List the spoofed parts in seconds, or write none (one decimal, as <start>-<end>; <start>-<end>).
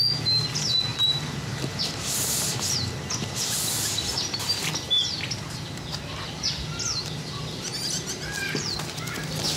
0.9-1.8